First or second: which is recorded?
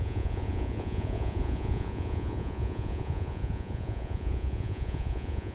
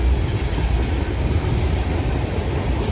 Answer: second